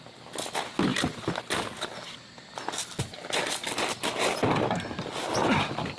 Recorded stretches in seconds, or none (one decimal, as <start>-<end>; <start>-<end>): 0.0-6.0